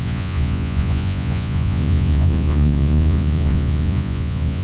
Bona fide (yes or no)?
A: no